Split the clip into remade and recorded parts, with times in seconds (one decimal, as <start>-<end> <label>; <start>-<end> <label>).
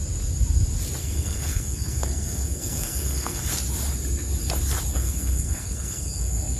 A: 0.0-1.0 recorded; 1.0-3.5 remade; 3.5-4.9 recorded; 4.9-6.6 remade